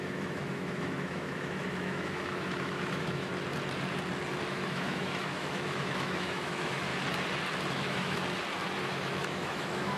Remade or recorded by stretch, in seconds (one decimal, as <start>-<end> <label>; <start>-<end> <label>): 0.0-3.3 remade; 3.3-4.5 recorded; 4.5-6.9 remade; 6.9-7.7 recorded; 7.7-8.2 remade; 8.2-8.8 recorded; 8.8-10.0 remade